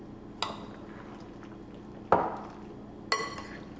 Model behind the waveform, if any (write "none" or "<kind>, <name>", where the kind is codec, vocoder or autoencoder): none